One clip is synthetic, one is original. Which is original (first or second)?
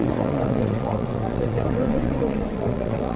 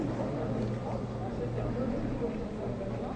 second